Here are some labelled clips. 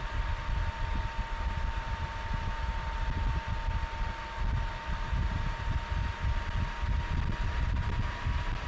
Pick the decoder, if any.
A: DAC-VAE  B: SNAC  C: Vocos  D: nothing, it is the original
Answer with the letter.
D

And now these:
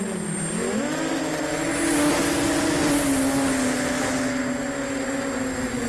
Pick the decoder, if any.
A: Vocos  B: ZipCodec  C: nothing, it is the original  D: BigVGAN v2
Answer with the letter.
C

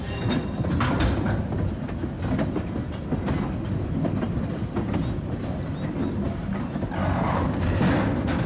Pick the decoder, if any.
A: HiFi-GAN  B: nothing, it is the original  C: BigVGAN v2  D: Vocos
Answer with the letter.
B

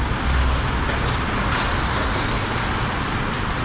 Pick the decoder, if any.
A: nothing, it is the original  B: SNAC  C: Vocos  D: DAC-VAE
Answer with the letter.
A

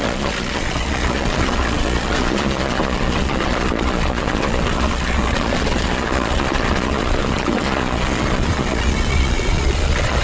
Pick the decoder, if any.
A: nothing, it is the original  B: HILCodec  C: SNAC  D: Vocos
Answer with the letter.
D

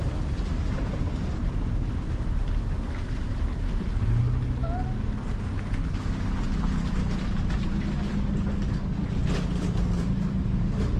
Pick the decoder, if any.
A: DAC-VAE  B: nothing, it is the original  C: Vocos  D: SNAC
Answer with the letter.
B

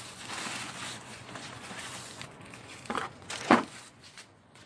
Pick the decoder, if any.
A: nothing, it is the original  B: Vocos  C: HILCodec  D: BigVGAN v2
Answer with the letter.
B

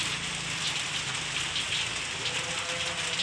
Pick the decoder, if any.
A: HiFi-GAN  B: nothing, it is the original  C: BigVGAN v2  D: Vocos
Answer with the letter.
B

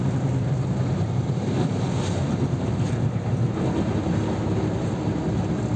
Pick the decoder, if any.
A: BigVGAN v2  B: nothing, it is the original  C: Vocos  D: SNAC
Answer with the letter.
B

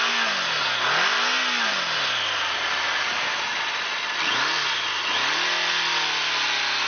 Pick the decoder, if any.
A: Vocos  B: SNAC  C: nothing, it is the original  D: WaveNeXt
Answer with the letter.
C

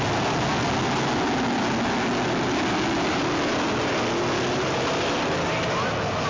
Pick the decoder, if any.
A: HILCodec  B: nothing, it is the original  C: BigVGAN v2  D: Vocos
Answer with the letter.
B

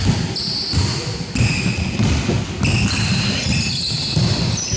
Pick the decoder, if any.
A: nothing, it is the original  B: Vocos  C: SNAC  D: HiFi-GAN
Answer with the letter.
A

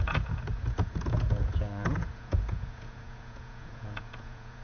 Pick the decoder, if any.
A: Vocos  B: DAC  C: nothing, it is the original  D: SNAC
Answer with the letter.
A